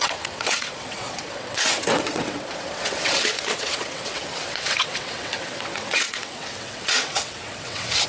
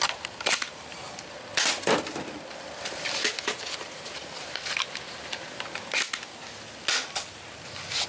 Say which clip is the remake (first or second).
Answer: first